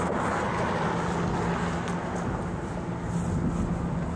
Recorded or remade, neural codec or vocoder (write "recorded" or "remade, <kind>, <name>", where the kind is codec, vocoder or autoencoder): recorded